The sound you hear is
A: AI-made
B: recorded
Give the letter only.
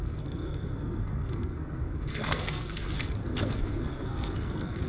A